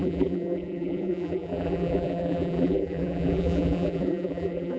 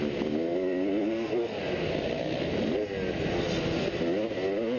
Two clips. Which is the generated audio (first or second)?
first